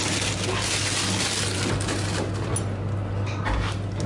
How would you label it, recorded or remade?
recorded